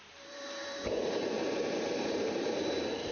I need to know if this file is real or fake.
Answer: fake